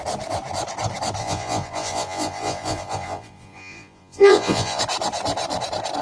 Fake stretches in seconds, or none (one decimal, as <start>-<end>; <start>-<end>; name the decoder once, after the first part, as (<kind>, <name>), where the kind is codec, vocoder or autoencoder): 1.2-4.8 (vocoder, Vocos)